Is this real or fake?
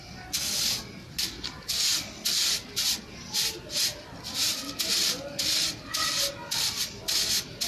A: real